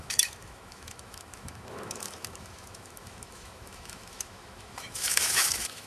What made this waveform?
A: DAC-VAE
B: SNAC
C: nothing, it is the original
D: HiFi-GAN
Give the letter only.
A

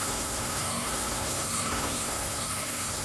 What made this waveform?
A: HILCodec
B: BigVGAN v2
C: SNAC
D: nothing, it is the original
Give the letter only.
C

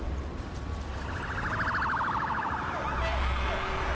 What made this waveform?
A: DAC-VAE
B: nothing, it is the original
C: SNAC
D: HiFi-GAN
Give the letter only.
B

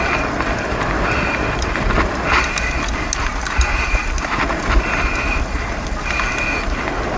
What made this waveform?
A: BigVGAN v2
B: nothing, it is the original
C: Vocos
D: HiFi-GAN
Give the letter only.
B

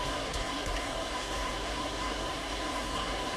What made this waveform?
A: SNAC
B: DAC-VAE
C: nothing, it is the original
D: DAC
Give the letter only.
A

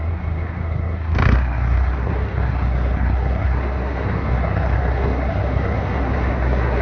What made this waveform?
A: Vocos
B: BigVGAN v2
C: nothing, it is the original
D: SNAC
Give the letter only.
D